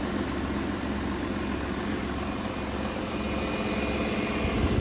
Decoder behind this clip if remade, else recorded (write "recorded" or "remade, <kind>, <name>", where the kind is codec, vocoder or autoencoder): recorded